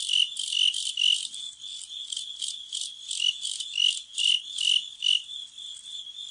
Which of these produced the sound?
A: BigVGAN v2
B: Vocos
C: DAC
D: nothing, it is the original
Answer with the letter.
D